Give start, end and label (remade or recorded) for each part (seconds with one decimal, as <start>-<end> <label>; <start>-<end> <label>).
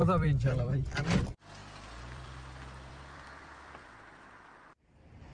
0.0-0.9 remade; 0.9-1.6 recorded; 1.6-4.8 remade; 4.8-5.3 recorded